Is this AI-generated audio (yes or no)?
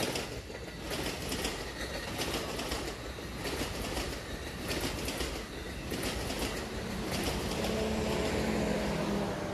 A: no